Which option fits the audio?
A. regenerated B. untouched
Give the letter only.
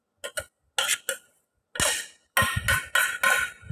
B